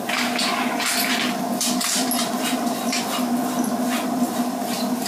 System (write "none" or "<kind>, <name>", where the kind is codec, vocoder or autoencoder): none